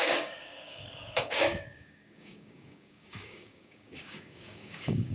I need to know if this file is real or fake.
fake